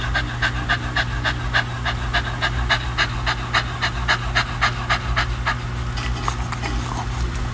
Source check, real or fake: real